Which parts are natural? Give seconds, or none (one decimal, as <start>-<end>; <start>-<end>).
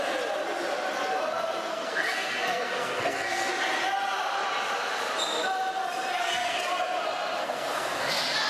0.0-1.7; 3.5-6.2; 6.7-7.4; 8.1-8.5